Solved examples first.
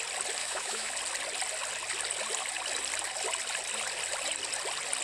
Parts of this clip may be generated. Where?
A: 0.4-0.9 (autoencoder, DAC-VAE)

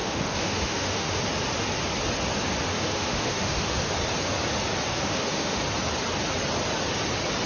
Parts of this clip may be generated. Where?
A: 0.0-1.2 (autoencoder, DAC-VAE); 2.7-3.9; 4.9-5.6

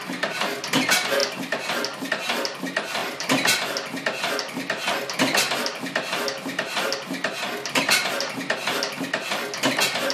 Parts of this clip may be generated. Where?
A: none